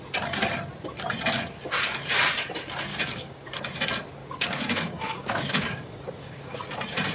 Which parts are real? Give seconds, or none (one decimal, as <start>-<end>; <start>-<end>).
0.0-2.9; 3.5-4.2; 6.6-7.1